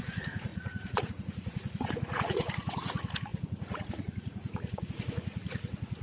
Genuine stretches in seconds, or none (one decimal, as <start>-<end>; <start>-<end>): none